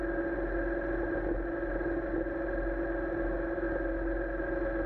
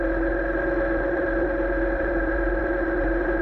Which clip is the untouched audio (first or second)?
first